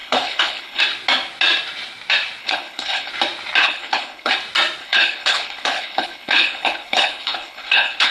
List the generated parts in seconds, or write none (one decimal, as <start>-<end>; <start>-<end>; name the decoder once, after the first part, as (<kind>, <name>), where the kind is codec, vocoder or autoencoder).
0.0-0.8 (codec, HILCodec); 2.4-3.1; 3.6-4.3; 4.8-8.1